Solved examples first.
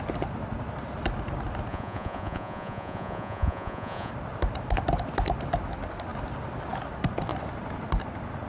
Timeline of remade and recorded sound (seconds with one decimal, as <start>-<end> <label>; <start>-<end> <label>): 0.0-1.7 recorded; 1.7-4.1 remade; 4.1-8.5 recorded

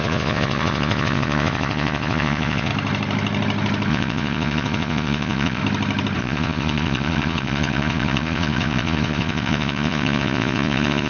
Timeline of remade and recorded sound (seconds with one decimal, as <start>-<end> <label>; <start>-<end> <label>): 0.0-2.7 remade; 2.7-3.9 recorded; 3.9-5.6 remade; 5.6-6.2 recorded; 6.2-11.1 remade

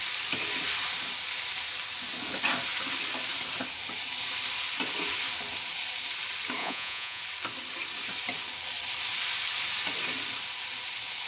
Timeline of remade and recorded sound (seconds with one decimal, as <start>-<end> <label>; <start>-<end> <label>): 0.0-6.6 recorded; 6.6-7.2 remade; 7.2-11.3 recorded